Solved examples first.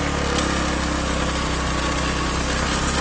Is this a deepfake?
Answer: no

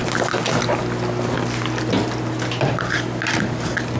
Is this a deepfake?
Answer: no